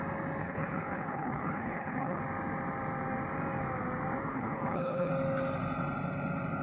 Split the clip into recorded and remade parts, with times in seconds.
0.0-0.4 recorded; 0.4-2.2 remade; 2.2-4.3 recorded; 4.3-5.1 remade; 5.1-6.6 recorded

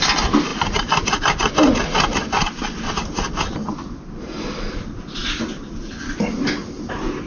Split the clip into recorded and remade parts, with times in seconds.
0.0-7.3 recorded

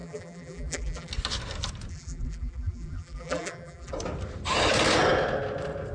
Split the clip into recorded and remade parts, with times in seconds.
0.0-1.1 remade; 1.1-1.9 recorded; 1.9-3.9 remade; 3.9-5.9 recorded